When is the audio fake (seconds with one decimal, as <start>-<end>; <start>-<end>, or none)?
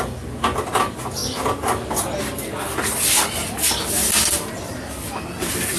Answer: none